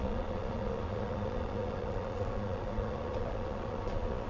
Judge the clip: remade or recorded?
remade